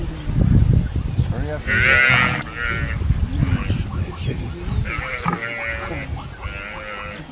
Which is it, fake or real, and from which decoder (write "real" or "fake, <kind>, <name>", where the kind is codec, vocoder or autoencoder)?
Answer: real